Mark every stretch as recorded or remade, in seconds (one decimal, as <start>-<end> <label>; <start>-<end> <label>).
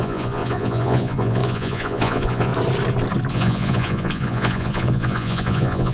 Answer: 0.0-2.5 remade; 2.5-3.3 recorded; 3.3-5.9 remade